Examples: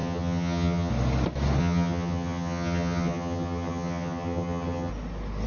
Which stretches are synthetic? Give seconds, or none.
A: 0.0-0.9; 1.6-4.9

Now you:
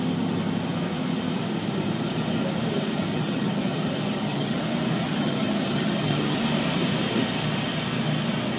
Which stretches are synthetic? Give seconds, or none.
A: 3.1-4.6; 5.0-6.4

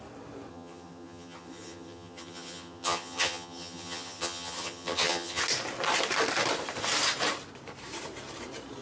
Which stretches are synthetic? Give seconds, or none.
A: 0.5-5.4

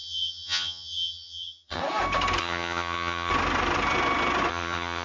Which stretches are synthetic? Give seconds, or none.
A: 0.0-1.8; 2.4-3.3; 4.5-5.0

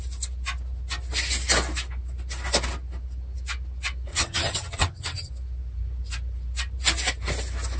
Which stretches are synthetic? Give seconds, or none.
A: 4.1-5.3

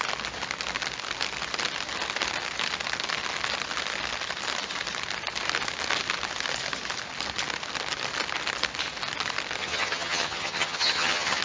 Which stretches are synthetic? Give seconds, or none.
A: 9.6-11.4

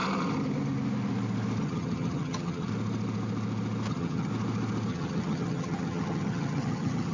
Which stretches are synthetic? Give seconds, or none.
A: 1.6-2.7; 3.9-4.3; 4.9-7.1

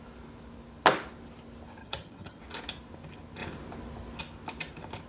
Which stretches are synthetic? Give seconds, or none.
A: 1.8-2.4